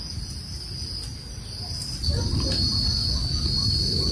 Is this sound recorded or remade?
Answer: recorded